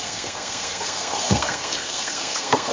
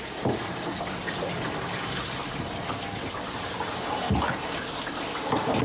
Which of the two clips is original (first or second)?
second